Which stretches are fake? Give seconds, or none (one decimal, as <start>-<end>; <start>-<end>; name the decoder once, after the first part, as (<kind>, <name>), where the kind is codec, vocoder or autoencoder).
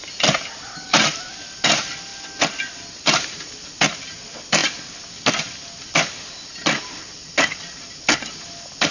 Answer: none